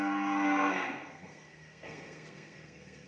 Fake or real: fake